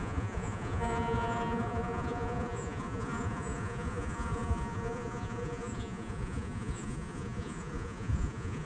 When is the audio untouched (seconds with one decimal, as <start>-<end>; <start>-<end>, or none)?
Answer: none